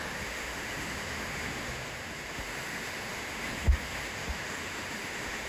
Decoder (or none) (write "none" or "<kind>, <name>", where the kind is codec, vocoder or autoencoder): autoencoder, DAC-VAE